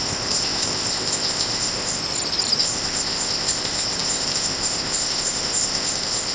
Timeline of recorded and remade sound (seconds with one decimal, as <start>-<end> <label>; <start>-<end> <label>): 0.0-2.0 remade; 2.0-2.6 recorded; 2.6-6.3 remade